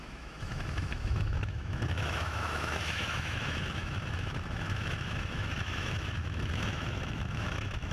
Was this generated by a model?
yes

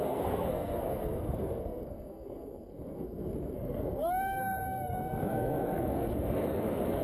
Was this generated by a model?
yes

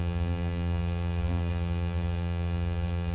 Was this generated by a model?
yes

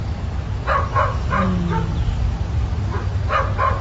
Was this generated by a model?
no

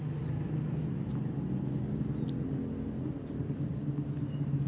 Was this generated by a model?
no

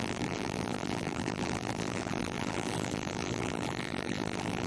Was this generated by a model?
yes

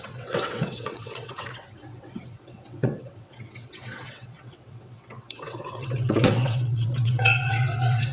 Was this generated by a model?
yes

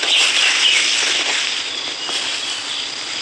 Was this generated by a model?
no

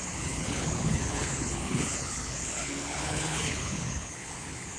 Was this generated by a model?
yes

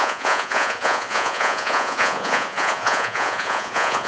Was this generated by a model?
yes